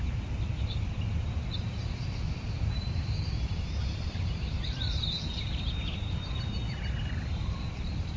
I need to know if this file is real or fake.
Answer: fake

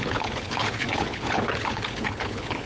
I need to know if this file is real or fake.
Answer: fake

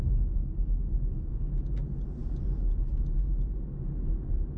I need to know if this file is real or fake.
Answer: real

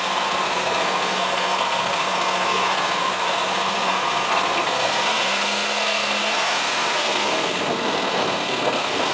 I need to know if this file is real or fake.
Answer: fake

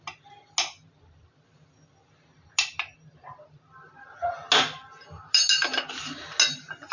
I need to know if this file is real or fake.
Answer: real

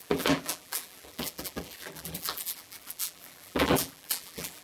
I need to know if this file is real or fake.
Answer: fake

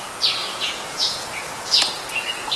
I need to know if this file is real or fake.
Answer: fake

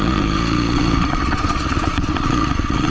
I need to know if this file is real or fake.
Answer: fake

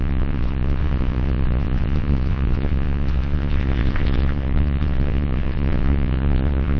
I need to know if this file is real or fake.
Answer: fake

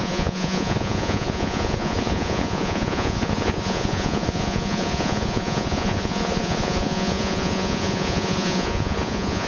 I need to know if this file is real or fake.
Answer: fake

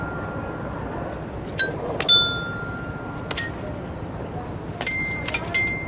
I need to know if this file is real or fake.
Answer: real